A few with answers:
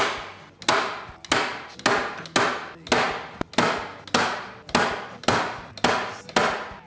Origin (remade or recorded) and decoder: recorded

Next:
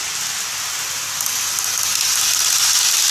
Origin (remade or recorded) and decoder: recorded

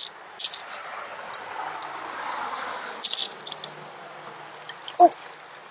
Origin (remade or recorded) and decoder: recorded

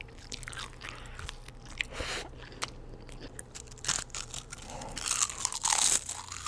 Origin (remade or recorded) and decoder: recorded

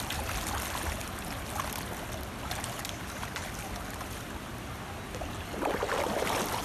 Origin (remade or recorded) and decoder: recorded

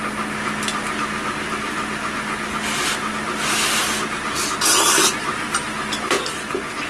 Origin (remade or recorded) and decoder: recorded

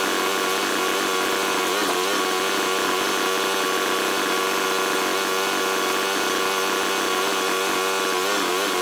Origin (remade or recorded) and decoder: recorded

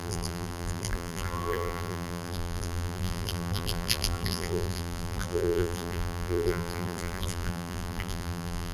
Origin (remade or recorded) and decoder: remade, vocoder, BigVGAN v2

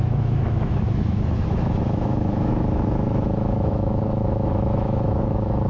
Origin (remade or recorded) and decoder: remade, autoencoder, DAC-VAE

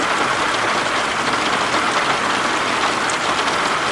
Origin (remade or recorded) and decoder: recorded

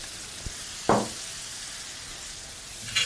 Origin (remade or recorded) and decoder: recorded